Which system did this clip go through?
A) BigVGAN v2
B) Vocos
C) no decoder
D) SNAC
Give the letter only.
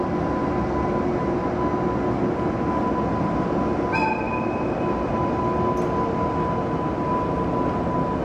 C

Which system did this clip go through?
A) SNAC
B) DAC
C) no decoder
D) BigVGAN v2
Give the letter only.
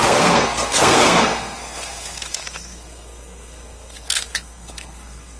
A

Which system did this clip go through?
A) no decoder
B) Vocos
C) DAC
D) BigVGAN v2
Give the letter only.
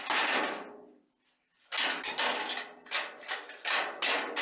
A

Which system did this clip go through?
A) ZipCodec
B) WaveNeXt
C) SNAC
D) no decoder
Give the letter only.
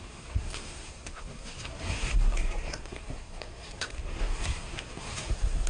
C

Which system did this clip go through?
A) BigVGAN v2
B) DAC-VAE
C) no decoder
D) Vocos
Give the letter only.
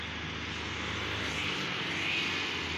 C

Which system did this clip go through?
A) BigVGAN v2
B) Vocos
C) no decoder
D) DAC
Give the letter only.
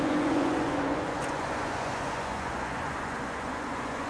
B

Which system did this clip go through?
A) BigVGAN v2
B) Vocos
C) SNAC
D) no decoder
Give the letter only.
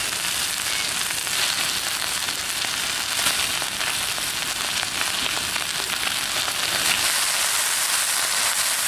D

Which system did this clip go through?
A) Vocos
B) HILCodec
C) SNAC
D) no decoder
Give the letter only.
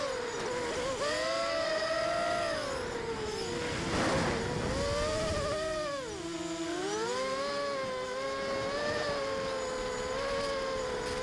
D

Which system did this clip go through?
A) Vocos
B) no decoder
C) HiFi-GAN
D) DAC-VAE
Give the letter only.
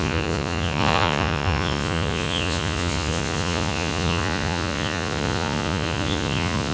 A